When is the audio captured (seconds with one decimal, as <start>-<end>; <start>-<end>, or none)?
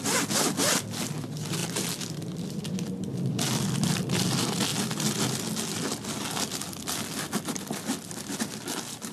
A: 0.0-9.1